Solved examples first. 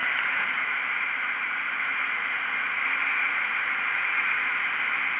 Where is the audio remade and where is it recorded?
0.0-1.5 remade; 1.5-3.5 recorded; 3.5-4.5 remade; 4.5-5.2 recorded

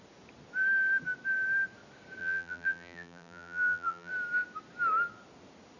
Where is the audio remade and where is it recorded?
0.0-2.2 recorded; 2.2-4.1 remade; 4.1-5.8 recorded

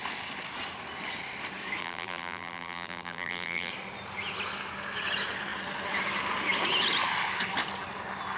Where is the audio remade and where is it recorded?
0.0-1.8 recorded; 1.8-3.7 remade; 3.7-8.4 recorded

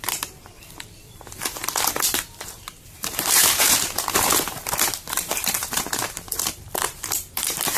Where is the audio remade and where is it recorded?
0.0-1.6 remade; 1.6-2.3 recorded; 2.3-7.8 remade

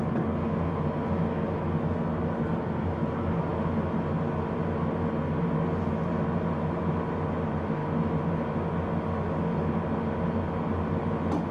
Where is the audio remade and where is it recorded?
0.0-1.0 remade; 1.0-2.2 recorded; 2.2-3.5 remade; 3.5-4.6 recorded; 4.6-11.5 remade